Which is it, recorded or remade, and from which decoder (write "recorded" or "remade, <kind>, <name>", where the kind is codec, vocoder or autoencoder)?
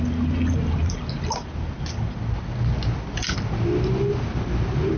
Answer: recorded